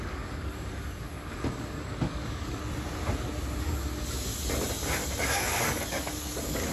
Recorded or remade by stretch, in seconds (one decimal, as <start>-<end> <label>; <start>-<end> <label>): 0.0-2.6 remade; 2.6-3.6 recorded; 3.6-4.3 remade; 4.3-5.2 recorded; 5.2-6.7 remade

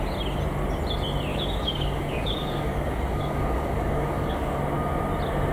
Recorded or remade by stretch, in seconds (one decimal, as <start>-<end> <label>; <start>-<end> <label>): 0.0-1.3 recorded; 1.3-4.6 remade; 4.6-5.5 recorded